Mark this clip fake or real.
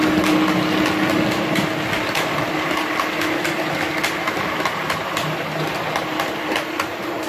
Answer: real